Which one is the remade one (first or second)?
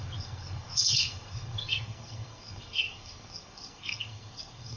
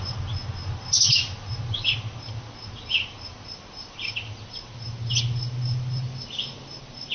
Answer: first